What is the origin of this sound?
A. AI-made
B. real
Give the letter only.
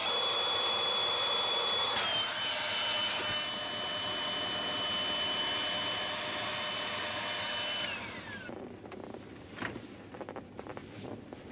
B